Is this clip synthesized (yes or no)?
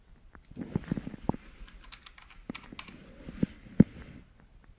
no